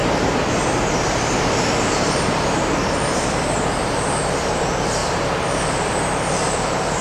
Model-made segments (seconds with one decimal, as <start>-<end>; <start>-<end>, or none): 0.0-7.0